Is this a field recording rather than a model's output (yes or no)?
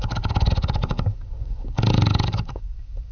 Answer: no